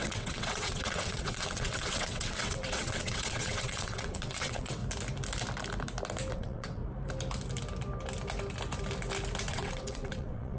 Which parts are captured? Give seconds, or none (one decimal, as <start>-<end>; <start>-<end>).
4.8-6.3; 6.8-9.5